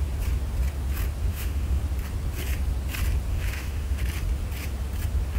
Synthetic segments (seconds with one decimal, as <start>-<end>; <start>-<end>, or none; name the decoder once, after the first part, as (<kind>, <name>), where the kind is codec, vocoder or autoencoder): 1.3-1.8 (autoencoder, DAC-VAE); 3.3-4.0